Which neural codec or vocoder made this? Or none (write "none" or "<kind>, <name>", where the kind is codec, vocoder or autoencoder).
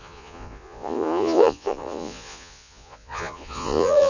vocoder, Vocos